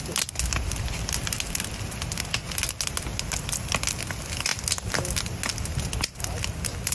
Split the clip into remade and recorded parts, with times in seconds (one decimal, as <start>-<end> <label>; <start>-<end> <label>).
0.0-6.9 recorded